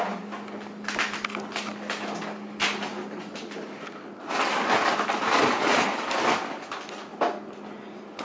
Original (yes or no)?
yes